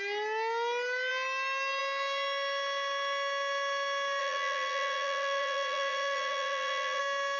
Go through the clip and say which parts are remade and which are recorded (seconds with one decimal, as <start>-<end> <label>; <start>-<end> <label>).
0.0-4.2 recorded; 4.2-7.0 remade; 7.0-7.4 recorded